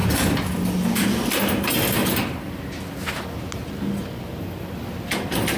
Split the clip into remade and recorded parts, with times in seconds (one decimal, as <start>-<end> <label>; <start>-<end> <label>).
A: 0.0-1.1 remade; 1.1-2.0 recorded; 2.0-2.7 remade; 2.7-5.6 recorded